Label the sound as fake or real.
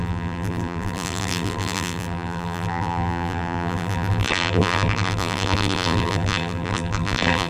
fake